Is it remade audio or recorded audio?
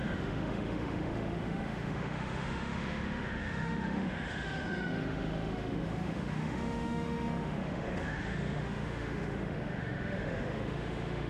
remade